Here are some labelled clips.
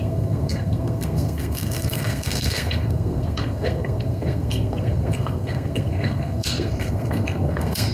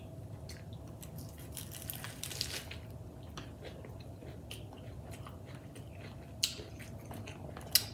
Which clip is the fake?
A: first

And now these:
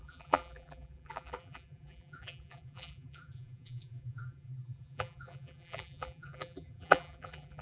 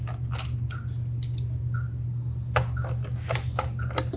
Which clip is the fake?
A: first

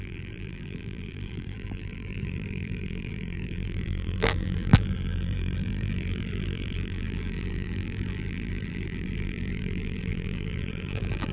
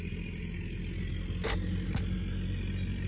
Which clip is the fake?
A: first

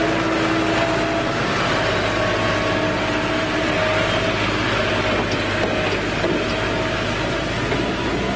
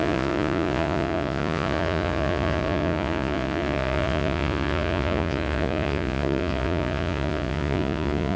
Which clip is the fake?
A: second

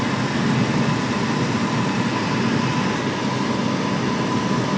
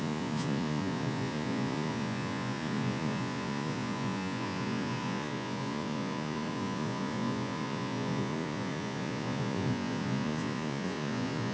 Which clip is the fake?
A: second